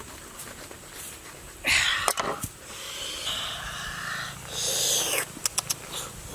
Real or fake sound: real